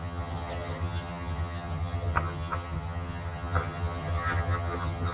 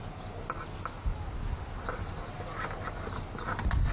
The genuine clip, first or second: second